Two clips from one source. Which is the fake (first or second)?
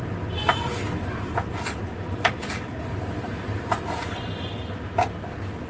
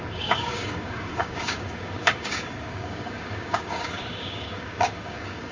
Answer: second